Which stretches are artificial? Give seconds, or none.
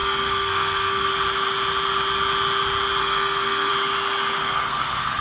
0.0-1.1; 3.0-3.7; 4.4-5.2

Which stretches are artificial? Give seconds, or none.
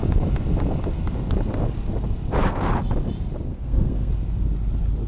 3.5-4.1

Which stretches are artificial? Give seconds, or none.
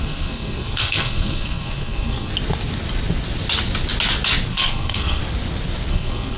0.0-2.3; 4.5-5.2; 5.9-6.4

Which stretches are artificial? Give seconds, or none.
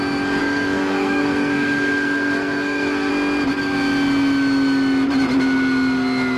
0.4-3.1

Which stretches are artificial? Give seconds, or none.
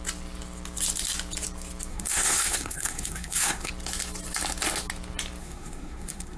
1.9-3.7; 5.4-6.4